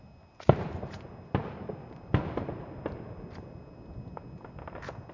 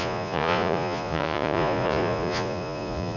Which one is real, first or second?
first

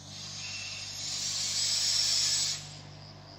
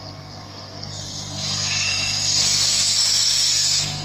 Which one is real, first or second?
first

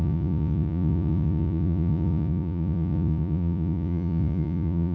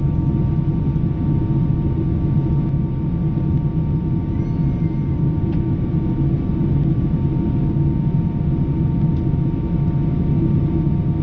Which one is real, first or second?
second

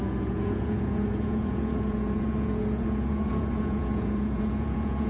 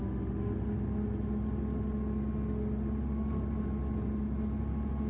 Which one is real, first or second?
second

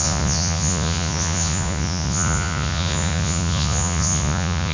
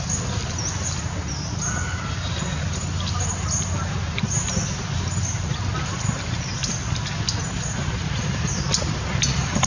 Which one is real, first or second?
second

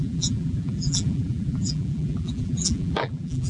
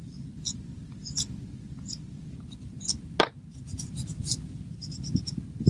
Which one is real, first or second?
second